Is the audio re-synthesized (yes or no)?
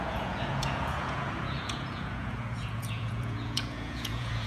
yes